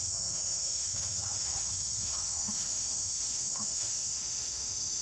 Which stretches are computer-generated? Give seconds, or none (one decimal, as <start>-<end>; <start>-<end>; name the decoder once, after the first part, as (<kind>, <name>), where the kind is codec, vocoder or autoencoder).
0.0-5.0 (autoencoder, DAC-VAE)